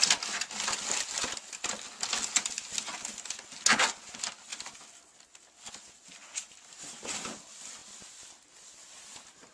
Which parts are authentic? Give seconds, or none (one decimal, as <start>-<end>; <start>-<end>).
0.0-9.5